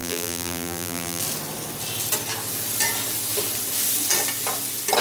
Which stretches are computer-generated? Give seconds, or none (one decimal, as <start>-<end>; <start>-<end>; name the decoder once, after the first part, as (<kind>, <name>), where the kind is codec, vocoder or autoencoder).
0.0-1.2 (vocoder, BigVGAN v2)